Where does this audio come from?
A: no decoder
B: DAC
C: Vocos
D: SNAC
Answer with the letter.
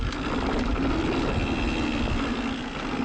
A